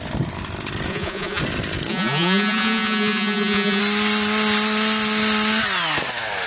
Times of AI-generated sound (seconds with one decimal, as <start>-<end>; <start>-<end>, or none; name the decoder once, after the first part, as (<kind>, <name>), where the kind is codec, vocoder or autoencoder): 0.9-1.4 (vocoder, Vocos); 1.9-3.8